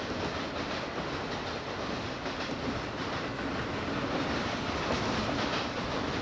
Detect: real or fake real